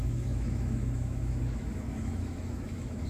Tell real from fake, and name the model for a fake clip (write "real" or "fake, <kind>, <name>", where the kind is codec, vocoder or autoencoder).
fake, autoencoder, DAC-VAE